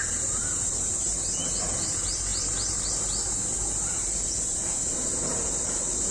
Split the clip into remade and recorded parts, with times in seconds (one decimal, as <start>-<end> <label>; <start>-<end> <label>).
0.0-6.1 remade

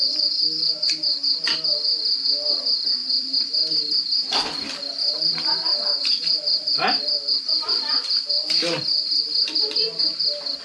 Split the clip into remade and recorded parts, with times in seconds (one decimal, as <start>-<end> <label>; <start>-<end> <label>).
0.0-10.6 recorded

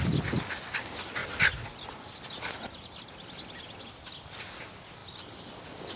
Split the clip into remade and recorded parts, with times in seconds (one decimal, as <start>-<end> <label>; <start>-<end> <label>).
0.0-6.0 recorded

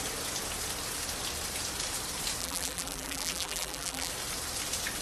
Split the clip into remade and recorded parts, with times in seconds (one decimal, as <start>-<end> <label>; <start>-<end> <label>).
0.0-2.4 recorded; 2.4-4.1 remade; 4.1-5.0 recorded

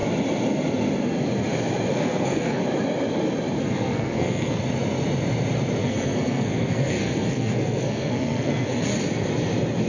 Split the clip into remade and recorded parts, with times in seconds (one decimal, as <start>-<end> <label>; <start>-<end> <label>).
0.0-1.9 recorded; 1.9-2.6 remade; 2.6-3.6 recorded; 3.6-4.6 remade; 4.6-5.8 recorded; 5.8-8.9 remade; 8.9-9.9 recorded

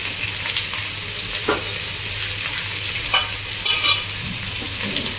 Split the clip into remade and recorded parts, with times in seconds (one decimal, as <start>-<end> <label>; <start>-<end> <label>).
0.0-5.2 recorded